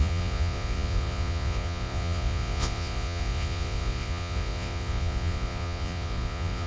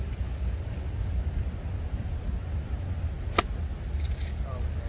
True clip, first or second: second